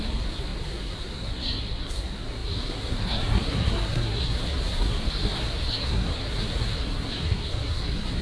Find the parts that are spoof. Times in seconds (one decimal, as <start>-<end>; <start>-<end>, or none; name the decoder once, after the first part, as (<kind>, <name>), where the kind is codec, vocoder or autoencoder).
0.0-8.2 (codec, SNAC)